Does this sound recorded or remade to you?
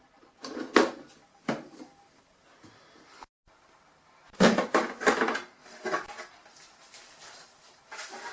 recorded